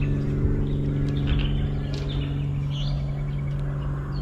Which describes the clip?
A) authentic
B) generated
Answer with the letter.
A